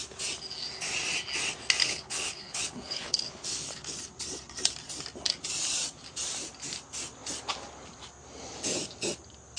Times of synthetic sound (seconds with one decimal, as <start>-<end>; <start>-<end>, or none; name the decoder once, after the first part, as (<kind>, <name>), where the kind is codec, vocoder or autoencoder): 1.8-3.9 (codec, HILCodec)